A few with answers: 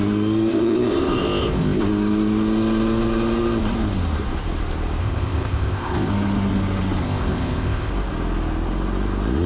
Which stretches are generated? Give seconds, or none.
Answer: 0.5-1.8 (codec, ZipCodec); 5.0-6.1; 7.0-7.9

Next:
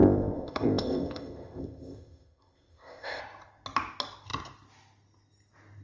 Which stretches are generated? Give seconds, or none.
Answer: 0.0-3.2 (codec, ZipCodec)

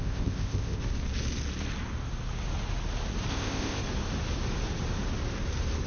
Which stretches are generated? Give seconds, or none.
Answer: 0.0-0.8 (codec, ZipCodec); 3.3-3.8